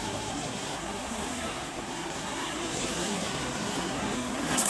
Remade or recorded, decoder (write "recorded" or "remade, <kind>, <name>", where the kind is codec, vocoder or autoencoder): remade, codec, SNAC